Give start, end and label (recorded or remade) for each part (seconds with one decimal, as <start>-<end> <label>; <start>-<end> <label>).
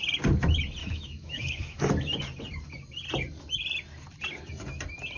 0.0-0.8 recorded; 0.8-1.8 remade; 1.8-5.2 recorded